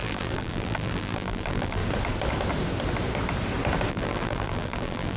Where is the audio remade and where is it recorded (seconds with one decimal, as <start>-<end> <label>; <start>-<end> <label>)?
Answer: 0.0-1.8 remade; 1.8-3.9 recorded; 3.9-5.2 remade